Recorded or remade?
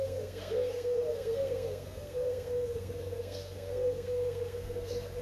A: remade